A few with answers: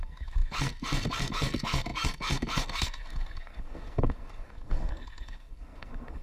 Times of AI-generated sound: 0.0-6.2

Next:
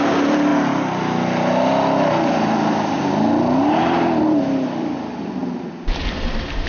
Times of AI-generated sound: 0.0-0.5; 3.8-5.4

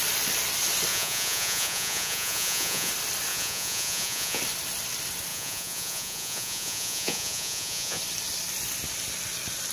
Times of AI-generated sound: 0.9-2.9; 3.3-4.4; 5.3-8.0

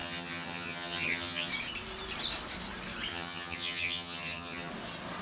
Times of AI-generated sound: 0.0-1.5; 3.1-4.7

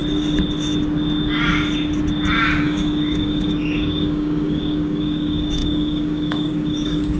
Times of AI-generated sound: 2.6-7.2

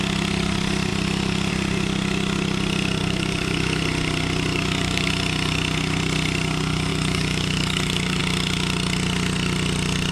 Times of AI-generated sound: 3.0-3.8; 4.5-5.1; 6.9-8.2

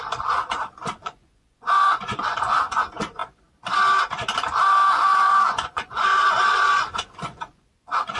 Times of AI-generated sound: 1.0-2.8; 4.8-8.2